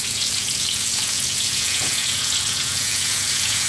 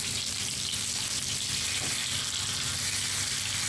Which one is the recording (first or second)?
second